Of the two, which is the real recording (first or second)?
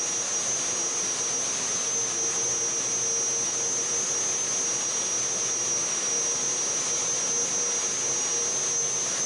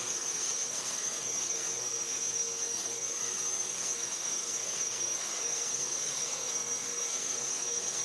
first